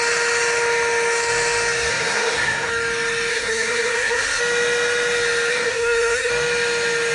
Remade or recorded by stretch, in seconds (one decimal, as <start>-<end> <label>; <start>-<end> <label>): 0.0-1.9 recorded; 1.9-2.7 remade; 2.7-3.3 recorded; 3.3-4.4 remade; 4.4-5.5 recorded; 5.5-6.3 remade; 6.3-7.1 recorded